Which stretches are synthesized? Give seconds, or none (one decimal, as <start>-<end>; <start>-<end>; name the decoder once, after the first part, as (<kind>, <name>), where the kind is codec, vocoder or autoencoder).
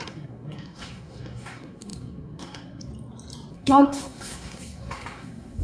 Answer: 0.0-2.9 (codec, SNAC); 3.5-5.6